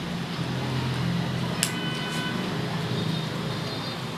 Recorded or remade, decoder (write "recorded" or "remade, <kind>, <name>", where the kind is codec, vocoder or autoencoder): recorded